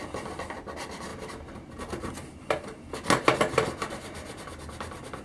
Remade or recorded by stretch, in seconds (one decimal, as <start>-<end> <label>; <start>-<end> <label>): 0.0-1.1 recorded; 1.1-2.1 remade; 2.1-5.2 recorded